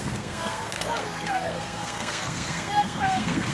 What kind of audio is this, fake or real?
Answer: fake